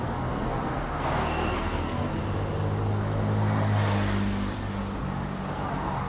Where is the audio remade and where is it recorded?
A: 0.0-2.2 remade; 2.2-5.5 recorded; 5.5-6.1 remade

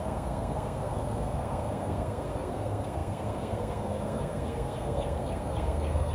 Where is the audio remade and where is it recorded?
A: 0.0-6.1 remade

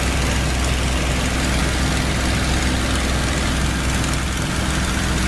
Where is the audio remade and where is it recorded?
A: 0.0-5.3 recorded